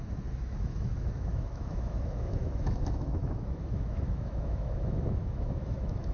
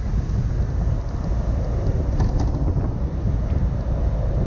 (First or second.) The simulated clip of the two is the first